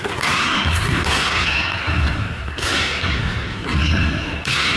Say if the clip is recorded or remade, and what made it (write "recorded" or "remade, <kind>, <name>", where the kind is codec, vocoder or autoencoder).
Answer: remade, codec, SNAC